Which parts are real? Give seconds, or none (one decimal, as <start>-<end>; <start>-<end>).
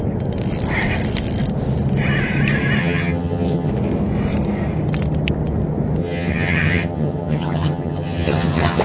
0.0-2.8; 3.7-6.0